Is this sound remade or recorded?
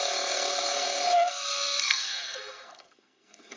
remade